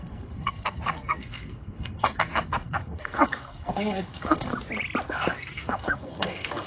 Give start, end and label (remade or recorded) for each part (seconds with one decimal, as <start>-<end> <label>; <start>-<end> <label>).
0.0-4.5 remade; 4.5-5.1 recorded; 5.1-6.7 remade